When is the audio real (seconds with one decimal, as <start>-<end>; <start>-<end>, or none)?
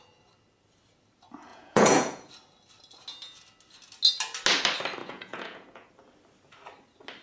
0.0-1.5; 2.3-5.0; 5.9-7.2